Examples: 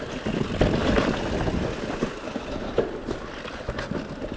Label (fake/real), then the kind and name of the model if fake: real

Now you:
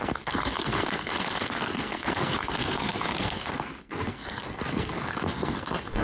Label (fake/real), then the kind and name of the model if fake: fake, codec, SNAC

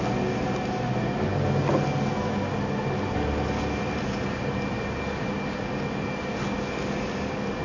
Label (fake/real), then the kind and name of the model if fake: real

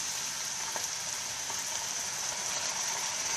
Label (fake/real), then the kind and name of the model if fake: real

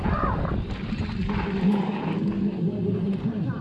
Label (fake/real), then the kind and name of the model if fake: real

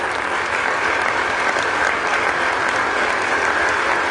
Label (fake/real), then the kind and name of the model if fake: real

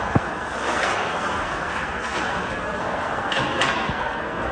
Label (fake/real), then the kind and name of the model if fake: fake, codec, SNAC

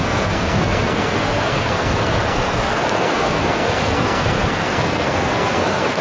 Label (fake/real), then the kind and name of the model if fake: fake, codec, SNAC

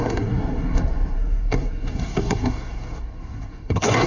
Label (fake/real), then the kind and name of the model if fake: fake, codec, SNAC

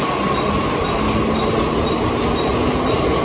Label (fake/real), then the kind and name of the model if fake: real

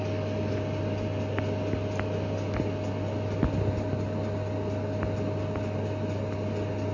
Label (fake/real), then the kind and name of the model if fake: real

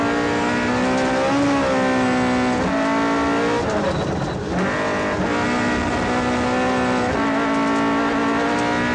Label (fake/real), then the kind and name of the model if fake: real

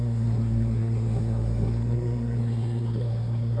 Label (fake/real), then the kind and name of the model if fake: fake, codec, SNAC